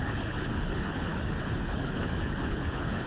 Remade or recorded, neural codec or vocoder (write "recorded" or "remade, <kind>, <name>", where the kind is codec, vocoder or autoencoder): remade, codec, HILCodec